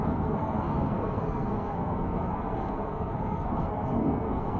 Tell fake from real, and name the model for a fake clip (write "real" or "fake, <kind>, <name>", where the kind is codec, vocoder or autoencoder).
fake, codec, SNAC